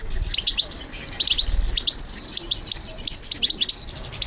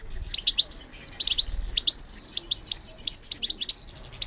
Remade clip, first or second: first